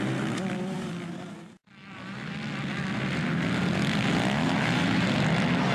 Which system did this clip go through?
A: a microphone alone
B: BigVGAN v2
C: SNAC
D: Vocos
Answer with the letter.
A